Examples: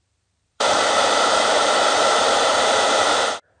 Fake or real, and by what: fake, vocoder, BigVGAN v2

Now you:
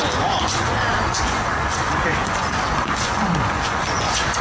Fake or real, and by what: fake, vocoder, Vocos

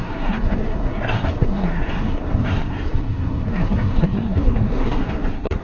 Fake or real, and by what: fake, codec, SNAC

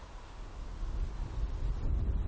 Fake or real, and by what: real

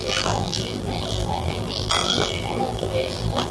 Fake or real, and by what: fake, vocoder, BigVGAN v2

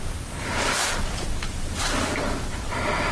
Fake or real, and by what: fake, vocoder, BigVGAN v2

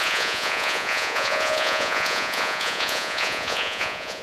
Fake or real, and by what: fake, vocoder, Vocos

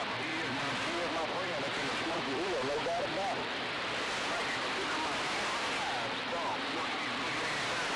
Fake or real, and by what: fake, vocoder, BigVGAN v2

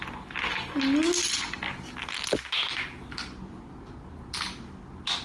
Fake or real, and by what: real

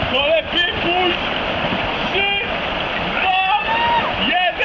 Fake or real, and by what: real